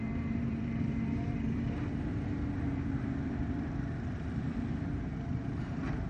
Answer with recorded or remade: remade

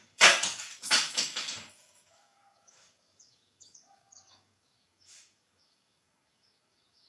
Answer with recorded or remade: remade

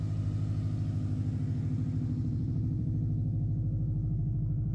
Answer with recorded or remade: remade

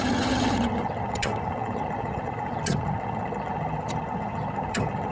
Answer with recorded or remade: remade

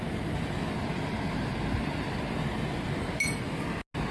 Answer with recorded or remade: recorded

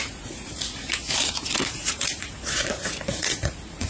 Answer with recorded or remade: remade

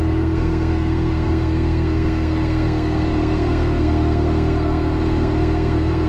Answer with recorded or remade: remade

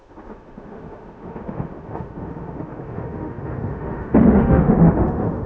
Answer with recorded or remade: remade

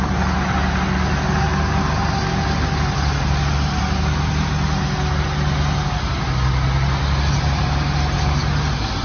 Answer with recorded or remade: recorded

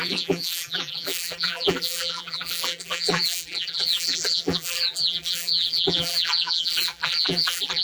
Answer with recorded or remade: remade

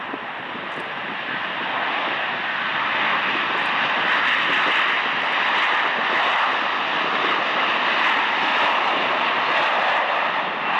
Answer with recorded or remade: recorded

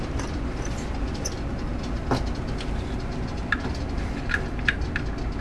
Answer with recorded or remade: recorded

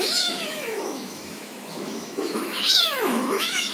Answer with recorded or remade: remade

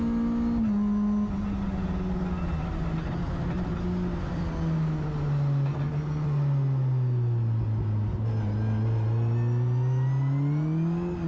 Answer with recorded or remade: recorded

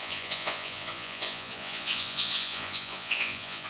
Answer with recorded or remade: remade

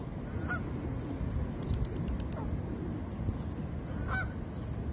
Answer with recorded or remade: recorded